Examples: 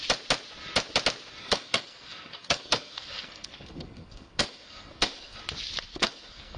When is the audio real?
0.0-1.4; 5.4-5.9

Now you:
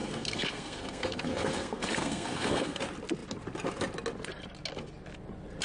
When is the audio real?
2.8-5.6

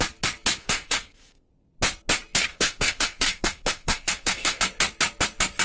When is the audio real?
0.0-0.6; 1.5-2.5; 4.6-5.6

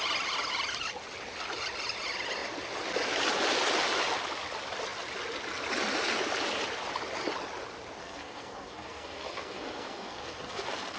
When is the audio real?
0.0-8.0

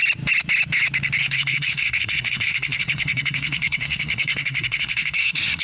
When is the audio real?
0.0-1.2

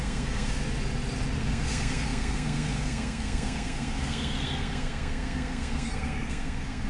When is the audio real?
0.6-1.4

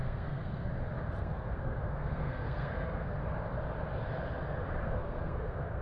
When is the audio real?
0.7-1.2; 3.2-4.8

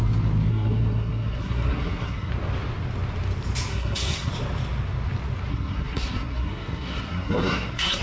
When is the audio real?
0.0-0.5; 2.3-3.7; 4.3-5.5